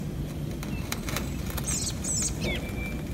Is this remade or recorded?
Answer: recorded